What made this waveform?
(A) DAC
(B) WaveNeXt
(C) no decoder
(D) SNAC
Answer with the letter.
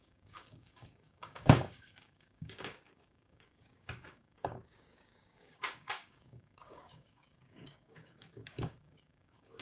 A